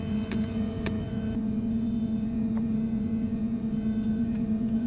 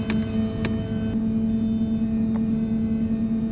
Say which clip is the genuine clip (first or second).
second